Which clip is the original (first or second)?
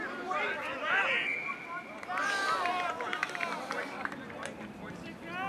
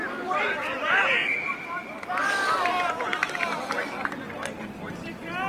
first